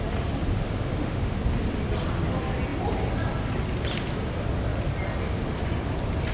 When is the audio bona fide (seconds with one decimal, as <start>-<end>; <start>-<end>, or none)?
0.0-0.5; 1.4-6.3